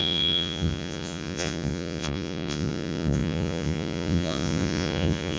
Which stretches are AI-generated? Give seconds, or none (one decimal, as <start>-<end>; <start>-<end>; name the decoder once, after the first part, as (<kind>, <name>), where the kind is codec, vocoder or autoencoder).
0.0-5.4 (vocoder, Vocos)

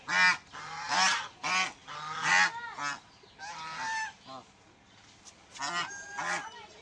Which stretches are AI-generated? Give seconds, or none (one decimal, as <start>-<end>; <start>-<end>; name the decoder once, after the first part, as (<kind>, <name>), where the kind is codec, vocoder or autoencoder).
none

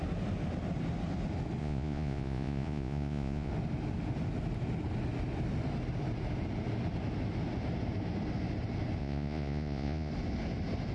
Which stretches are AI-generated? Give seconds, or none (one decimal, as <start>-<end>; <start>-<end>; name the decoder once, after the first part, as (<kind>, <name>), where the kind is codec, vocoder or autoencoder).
1.6-3.5 (vocoder, Vocos); 9.0-10.1

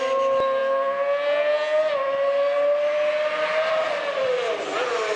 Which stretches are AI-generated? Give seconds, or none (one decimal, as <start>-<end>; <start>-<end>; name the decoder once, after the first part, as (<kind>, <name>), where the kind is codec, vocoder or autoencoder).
none

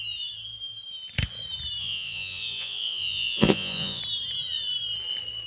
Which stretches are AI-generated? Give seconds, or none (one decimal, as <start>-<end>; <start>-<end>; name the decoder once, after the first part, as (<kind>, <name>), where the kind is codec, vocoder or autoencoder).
1.8-4.0 (vocoder, Vocos)

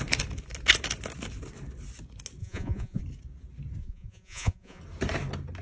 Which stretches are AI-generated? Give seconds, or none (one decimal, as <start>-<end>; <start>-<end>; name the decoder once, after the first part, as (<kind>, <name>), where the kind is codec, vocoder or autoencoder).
2.4-3.0 (vocoder, Vocos); 3.8-4.8

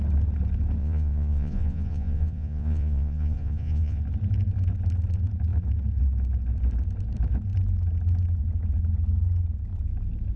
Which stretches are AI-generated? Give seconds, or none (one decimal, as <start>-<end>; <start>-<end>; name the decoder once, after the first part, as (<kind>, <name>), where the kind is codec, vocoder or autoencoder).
0.8-4.0 (vocoder, Vocos)

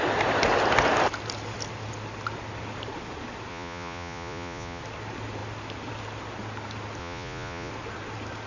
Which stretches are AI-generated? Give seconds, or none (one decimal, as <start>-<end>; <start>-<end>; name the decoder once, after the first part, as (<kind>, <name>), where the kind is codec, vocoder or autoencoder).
3.5-4.8 (vocoder, Vocos); 7.0-7.7